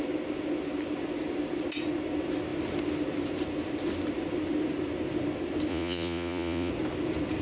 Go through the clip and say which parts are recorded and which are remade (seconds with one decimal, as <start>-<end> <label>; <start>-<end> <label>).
0.0-5.7 recorded; 5.7-6.7 remade; 6.7-7.4 recorded